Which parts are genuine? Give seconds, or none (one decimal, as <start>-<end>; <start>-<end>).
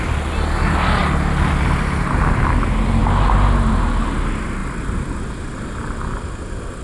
0.0-6.8